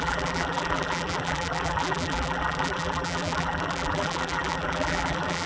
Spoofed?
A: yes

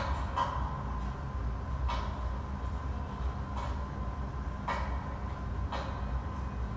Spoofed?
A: no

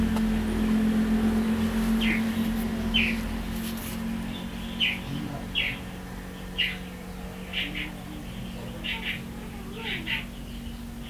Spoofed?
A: no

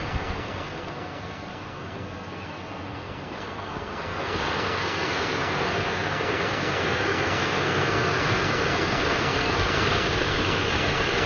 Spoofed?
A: yes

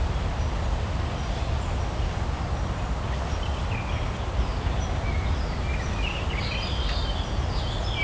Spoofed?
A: no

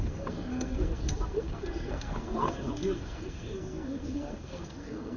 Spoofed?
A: yes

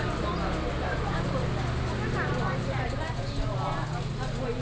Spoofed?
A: no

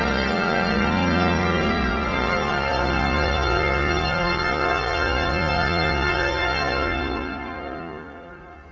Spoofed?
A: yes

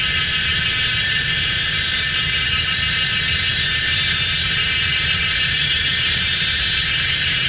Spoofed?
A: yes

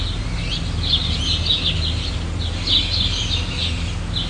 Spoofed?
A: no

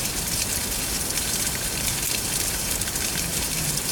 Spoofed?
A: yes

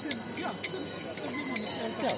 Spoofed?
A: no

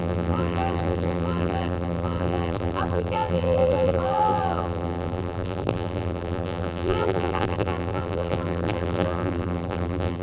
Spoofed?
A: yes